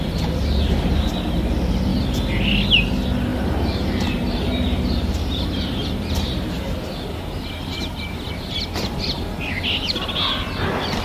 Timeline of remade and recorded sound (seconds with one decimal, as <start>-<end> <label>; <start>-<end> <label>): 0.0-3.3 recorded; 3.3-8.3 remade; 8.3-11.0 recorded